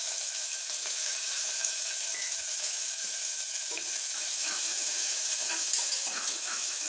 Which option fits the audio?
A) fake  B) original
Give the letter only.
A